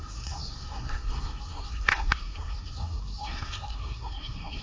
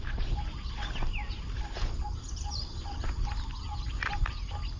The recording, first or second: second